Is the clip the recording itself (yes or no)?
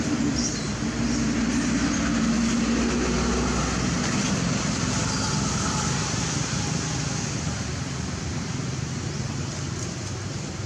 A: yes